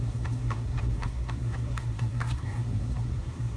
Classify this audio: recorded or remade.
remade